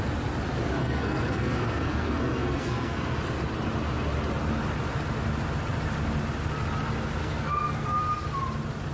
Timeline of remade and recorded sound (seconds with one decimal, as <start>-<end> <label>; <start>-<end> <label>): 0.0-0.8 recorded; 0.8-3.2 remade; 3.2-7.2 recorded; 7.2-8.0 remade; 8.0-8.9 recorded